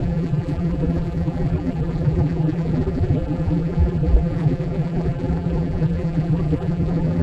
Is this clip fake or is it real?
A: fake